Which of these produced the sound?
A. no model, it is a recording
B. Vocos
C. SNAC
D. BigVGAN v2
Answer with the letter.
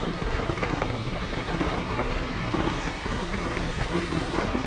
C